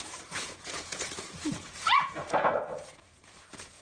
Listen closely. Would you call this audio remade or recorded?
remade